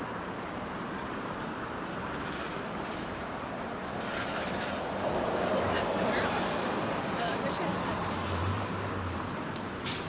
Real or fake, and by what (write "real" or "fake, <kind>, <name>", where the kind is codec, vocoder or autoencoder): fake, vocoder, BigVGAN v2